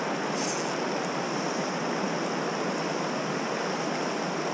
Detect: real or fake real